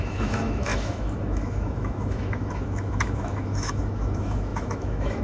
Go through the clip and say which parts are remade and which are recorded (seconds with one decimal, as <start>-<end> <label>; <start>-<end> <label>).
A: 0.0-5.2 remade